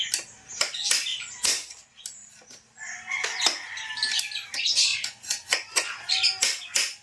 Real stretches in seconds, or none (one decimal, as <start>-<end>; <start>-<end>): 0.0-4.9; 6.1-7.0